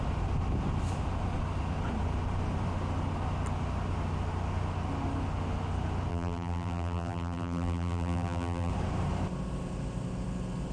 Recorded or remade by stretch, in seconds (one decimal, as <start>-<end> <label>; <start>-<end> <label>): 0.0-6.1 recorded; 6.1-8.7 remade; 8.7-10.7 recorded